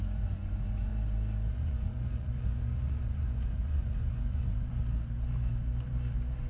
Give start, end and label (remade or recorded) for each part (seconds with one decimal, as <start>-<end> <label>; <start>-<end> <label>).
0.0-0.9 remade; 0.9-1.5 recorded; 1.5-4.8 remade; 4.8-6.5 recorded

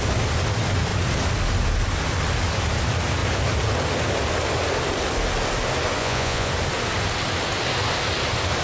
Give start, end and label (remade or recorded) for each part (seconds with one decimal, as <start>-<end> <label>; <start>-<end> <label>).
0.0-6.0 recorded; 6.0-6.5 remade; 6.5-8.6 recorded

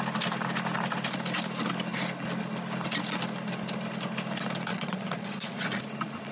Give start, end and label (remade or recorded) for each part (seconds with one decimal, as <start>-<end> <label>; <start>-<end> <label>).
0.0-4.7 recorded; 4.7-5.8 remade; 5.8-6.3 recorded